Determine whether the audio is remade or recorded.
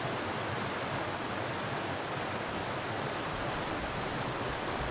recorded